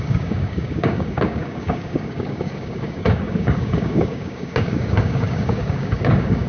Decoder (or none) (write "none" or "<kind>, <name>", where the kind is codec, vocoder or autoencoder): codec, DAC